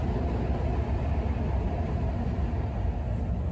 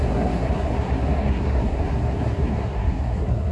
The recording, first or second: first